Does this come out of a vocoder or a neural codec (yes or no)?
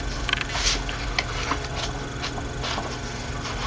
no